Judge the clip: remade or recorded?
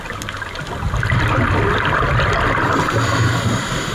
recorded